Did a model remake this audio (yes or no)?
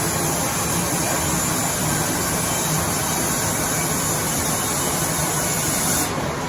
no